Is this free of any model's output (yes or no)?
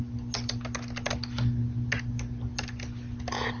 yes